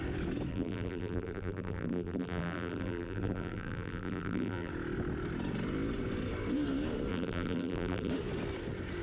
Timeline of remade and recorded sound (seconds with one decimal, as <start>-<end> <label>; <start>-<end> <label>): 0.0-0.5 recorded; 0.5-4.7 remade; 4.7-7.1 recorded; 7.1-8.1 remade; 8.1-9.0 recorded